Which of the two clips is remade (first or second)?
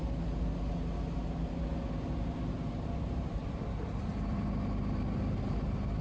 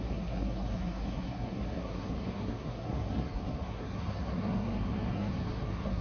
second